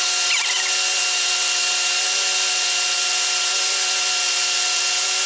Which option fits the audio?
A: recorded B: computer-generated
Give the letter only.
A